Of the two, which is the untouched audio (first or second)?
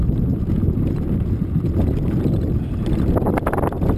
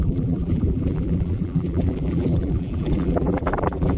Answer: first